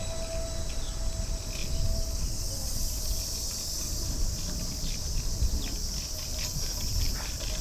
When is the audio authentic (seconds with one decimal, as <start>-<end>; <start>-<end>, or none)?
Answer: 0.0-7.6